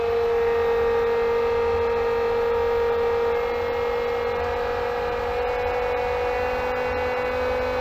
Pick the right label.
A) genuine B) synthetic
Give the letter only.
A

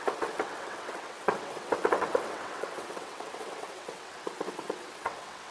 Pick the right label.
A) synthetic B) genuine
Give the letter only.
A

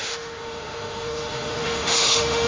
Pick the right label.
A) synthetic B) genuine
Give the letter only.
A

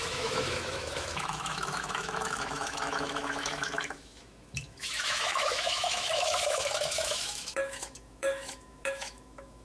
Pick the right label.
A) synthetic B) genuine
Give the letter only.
A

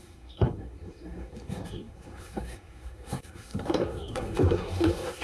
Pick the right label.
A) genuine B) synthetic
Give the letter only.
B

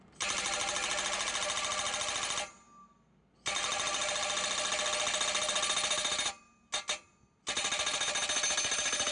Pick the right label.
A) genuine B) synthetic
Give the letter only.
A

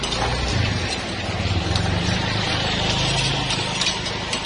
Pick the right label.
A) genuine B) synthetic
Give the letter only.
B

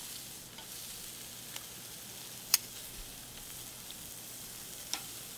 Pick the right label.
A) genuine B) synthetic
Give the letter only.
A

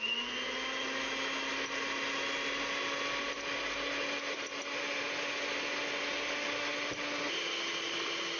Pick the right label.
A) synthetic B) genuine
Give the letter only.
B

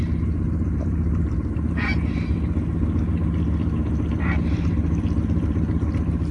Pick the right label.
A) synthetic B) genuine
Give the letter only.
B